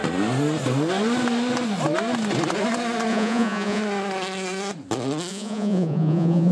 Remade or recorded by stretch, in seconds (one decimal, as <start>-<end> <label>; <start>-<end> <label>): 0.0-3.1 recorded; 3.1-3.8 remade; 3.8-5.3 recorded; 5.3-6.5 remade

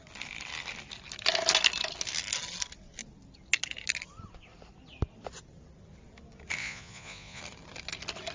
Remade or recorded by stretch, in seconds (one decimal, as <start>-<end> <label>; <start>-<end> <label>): 0.0-6.6 recorded; 6.6-7.4 remade; 7.4-8.3 recorded